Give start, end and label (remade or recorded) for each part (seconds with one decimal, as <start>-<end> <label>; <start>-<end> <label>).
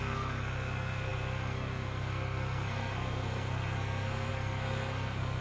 0.0-5.4 remade